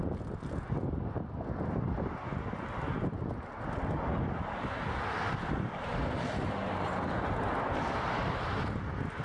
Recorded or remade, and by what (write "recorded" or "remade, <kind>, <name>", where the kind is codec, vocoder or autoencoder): recorded